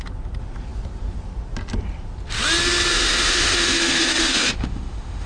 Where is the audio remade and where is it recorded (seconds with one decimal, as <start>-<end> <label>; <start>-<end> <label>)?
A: 0.0-2.9 recorded; 2.9-5.3 remade